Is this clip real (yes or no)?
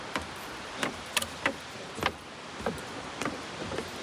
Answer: no